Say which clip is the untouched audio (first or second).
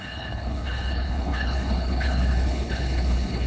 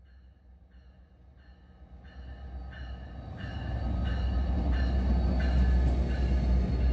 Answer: second